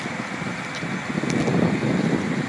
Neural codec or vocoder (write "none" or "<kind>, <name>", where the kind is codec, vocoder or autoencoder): none